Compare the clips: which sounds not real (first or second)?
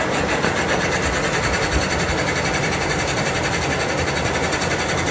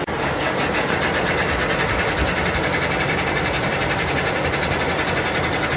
first